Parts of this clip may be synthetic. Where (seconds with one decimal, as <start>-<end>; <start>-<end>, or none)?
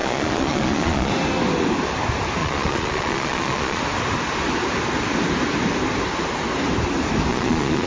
0.0-1.1; 2.4-3.8; 7.3-7.9